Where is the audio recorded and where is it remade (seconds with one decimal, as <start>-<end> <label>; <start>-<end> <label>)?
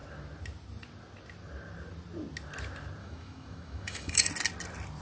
0.0-3.0 recorded; 3.0-4.3 remade; 4.3-5.0 recorded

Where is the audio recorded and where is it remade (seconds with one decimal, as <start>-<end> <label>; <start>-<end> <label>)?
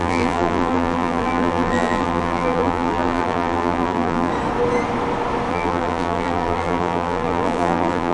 0.0-4.3 remade; 4.3-5.5 recorded; 5.5-8.1 remade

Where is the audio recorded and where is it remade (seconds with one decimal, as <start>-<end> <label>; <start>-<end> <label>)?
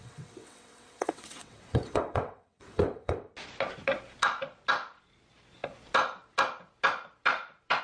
0.0-3.3 remade; 3.3-7.8 recorded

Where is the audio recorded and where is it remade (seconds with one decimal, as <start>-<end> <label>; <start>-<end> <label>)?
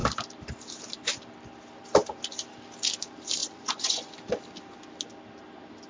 0.0-3.4 recorded; 3.4-4.1 remade; 4.1-5.9 recorded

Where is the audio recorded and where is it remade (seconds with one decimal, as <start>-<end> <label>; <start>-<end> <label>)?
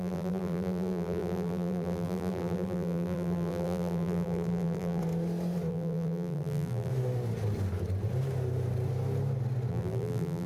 0.0-5.0 remade; 5.0-5.7 recorded; 5.7-6.9 remade; 6.9-9.7 recorded; 9.7-10.5 remade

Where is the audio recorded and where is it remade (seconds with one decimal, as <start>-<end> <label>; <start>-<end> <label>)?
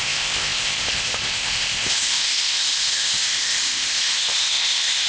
0.0-5.1 remade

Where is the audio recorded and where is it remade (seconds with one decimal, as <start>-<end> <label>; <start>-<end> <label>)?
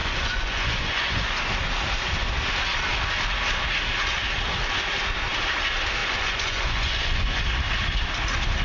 0.0-1.4 remade; 1.4-6.0 recorded; 6.0-7.4 remade; 7.4-8.6 recorded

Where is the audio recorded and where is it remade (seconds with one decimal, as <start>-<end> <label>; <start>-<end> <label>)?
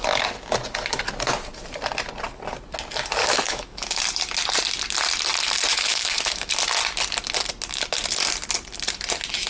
0.0-3.2 recorded; 3.2-4.0 remade; 4.0-5.7 recorded; 5.7-6.5 remade; 6.5-9.5 recorded